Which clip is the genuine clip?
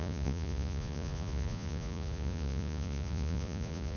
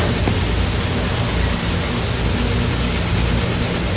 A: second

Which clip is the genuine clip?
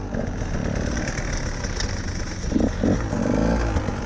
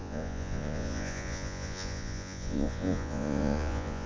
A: first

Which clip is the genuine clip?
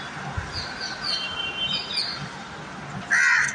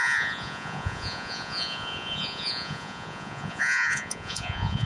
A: first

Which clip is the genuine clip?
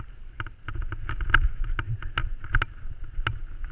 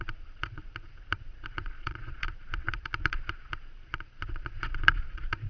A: first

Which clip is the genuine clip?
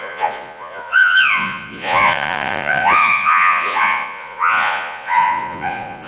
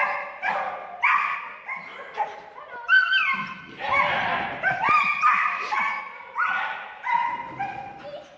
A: second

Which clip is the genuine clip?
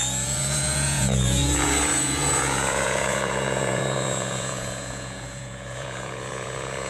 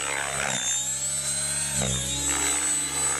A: second